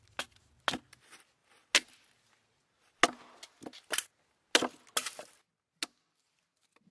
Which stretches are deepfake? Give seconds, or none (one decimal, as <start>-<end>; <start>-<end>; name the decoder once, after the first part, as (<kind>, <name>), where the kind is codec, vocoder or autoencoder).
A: none